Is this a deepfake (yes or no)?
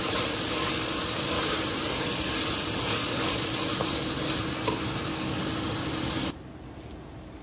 no